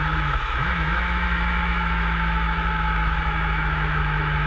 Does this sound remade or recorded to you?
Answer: remade